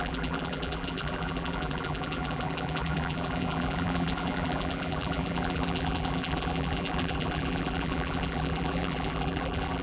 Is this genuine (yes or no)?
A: no